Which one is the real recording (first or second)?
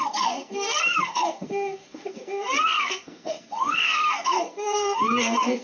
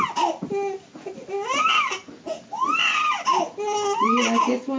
second